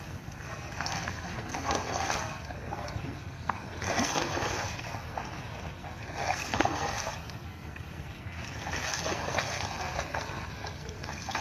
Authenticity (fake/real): fake